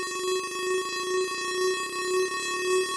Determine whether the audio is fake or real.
real